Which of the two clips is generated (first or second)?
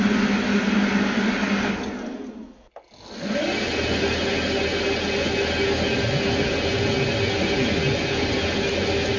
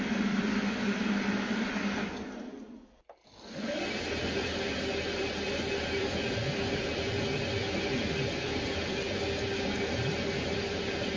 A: second